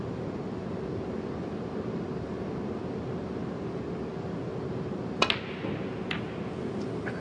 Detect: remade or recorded recorded